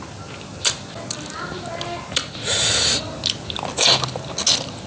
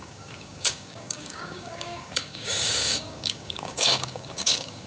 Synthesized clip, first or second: second